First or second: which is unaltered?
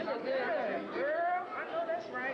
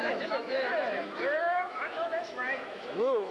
first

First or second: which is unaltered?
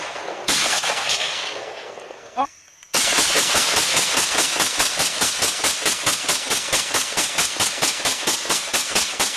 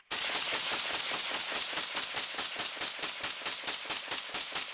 second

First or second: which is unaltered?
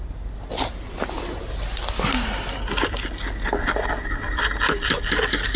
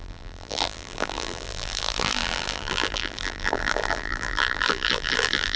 first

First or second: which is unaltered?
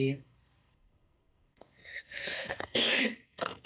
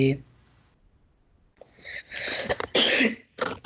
second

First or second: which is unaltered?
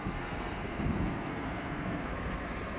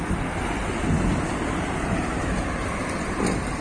second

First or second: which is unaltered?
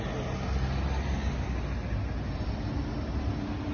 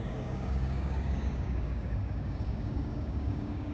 first